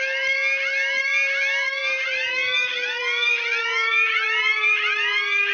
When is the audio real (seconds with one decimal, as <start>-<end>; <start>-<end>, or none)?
0.0-5.5